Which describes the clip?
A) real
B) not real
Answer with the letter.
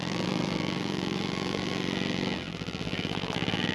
B